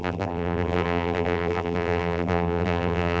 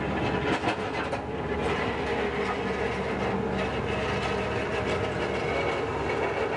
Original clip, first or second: second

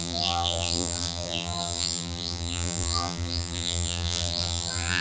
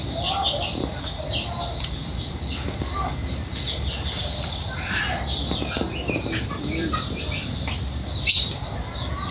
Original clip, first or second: second